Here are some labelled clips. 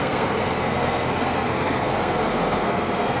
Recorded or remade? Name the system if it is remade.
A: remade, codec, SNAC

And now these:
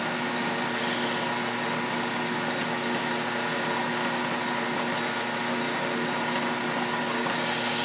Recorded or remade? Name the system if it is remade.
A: recorded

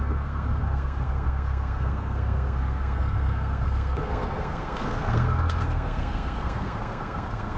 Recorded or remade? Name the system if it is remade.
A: remade, codec, SNAC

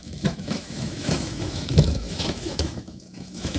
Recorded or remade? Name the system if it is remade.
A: remade, autoencoder, DAC-VAE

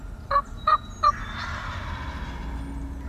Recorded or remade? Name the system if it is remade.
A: recorded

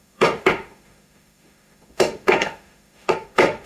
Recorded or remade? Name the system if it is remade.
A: remade, autoencoder, DAC-VAE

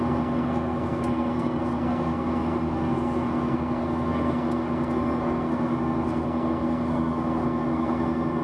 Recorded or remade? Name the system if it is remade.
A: remade, codec, SNAC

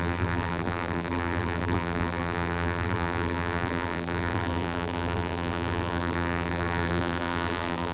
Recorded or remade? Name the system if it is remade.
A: remade, vocoder, BigVGAN v2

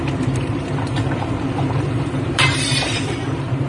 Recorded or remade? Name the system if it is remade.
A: remade, vocoder, BigVGAN v2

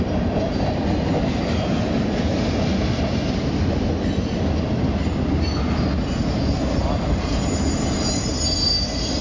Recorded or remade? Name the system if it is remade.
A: recorded